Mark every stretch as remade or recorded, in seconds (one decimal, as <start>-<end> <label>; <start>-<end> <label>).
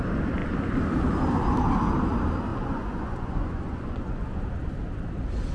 0.0-2.5 recorded; 2.5-4.4 remade; 4.4-5.5 recorded